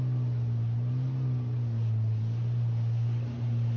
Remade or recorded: recorded